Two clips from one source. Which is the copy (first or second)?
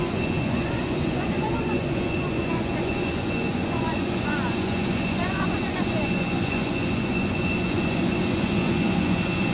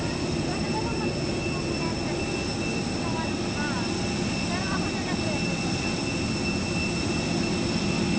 first